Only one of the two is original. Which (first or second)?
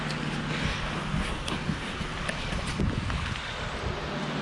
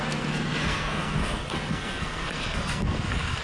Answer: first